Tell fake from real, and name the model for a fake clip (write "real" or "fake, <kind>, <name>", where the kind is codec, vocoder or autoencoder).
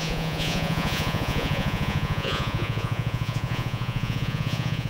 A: fake, vocoder, Vocos